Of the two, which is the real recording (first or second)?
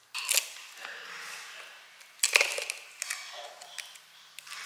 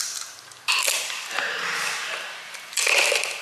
first